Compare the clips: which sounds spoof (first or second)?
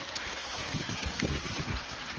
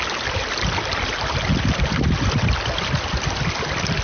first